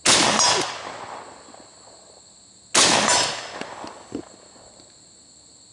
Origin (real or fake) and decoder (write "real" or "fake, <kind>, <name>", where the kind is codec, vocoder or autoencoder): real